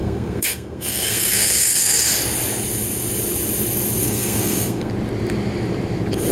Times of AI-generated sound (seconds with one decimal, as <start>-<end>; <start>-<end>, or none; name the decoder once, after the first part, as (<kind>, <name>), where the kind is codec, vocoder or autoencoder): 0.0-2.1 (codec, SNAC); 4.0-4.9